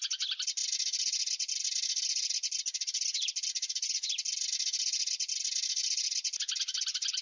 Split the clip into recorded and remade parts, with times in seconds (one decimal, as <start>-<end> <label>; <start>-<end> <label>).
0.0-7.2 recorded